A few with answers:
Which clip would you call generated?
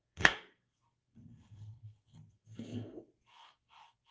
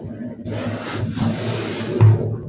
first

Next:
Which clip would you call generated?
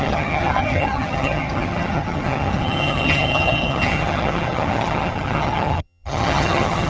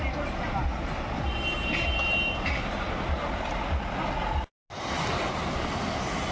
first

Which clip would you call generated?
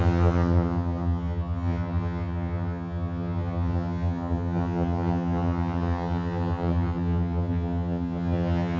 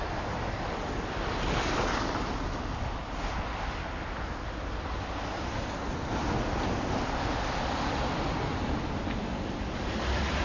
first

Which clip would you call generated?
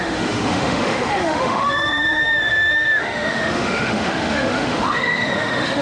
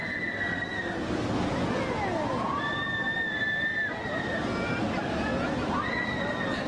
first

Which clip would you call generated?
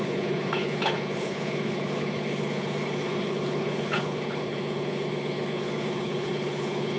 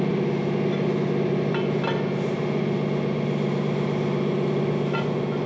first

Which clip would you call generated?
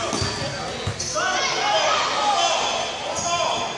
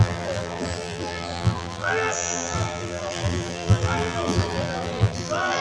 second